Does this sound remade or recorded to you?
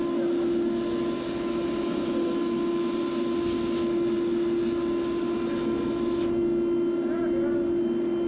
recorded